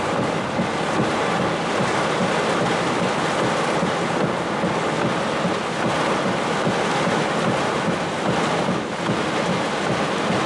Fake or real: real